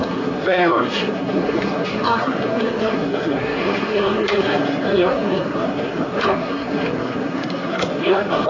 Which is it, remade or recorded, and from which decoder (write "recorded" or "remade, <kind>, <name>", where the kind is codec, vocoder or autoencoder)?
remade, codec, SNAC